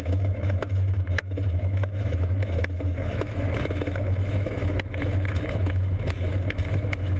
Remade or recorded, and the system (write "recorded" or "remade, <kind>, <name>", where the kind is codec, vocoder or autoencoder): remade, autoencoder, DAC-VAE